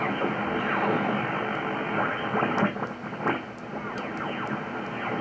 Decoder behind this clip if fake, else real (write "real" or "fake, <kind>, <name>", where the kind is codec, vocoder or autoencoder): real